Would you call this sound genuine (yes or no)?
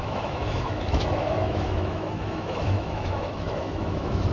no